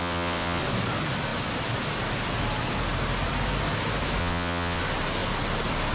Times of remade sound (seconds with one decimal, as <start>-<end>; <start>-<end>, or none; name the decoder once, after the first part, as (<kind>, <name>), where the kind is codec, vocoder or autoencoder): 0.0-0.6 (vocoder, WaveNeXt); 4.2-4.8